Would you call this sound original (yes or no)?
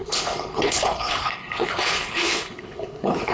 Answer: no